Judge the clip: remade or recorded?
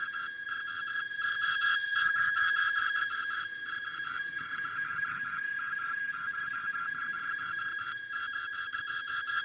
remade